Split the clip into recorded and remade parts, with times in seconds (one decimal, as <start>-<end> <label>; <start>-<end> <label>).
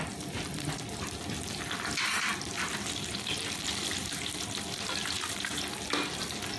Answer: 0.0-2.3 remade; 2.3-6.6 recorded